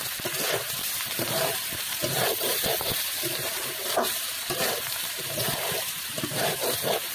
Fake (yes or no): yes